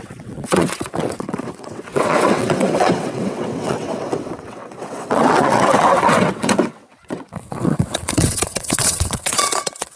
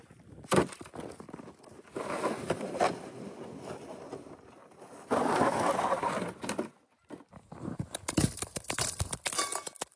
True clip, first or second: second